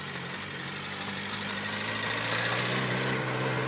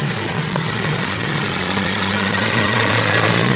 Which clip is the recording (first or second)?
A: first